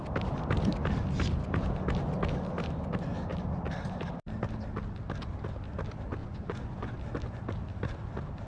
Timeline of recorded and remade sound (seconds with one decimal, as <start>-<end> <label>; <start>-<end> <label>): 0.0-6.2 recorded; 6.2-7.0 remade; 7.0-8.5 recorded